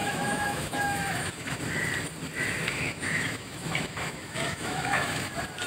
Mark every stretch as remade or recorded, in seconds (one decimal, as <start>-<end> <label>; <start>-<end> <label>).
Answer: 0.0-1.6 remade; 1.6-2.6 recorded; 2.6-5.3 remade; 5.3-5.7 recorded